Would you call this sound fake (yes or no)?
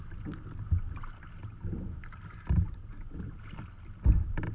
no